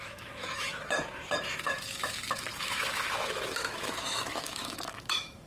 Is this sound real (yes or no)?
no